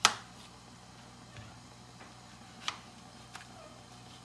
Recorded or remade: recorded